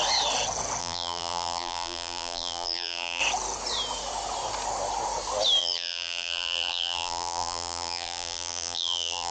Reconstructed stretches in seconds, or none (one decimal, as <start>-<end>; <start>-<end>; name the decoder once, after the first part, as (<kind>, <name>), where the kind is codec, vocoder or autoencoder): 0.8-3.2 (vocoder, BigVGAN v2); 5.6-9.3